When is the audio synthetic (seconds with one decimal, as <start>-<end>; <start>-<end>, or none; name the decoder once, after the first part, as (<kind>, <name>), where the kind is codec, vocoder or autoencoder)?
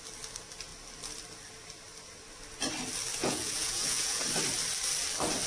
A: 3.2-4.2 (vocoder, Vocos)